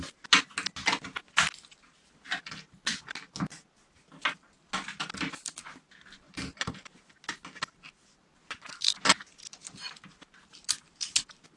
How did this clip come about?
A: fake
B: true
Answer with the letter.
B